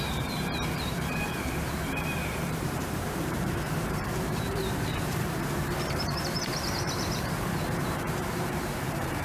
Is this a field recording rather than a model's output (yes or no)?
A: no